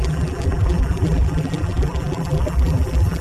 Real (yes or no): no